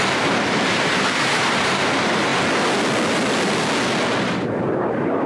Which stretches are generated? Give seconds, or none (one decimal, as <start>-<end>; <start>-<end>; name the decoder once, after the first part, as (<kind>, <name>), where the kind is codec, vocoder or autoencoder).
0.0-2.3 (vocoder, BigVGAN v2); 4.2-5.3